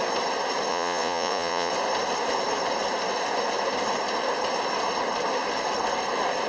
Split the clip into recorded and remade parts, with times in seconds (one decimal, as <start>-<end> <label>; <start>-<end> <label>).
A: 0.0-0.7 recorded; 0.7-1.7 remade; 1.7-6.5 recorded